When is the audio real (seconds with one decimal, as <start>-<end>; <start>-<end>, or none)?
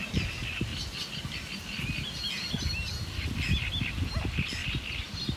0.0-4.6